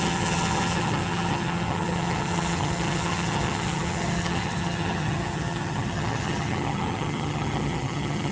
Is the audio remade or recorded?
remade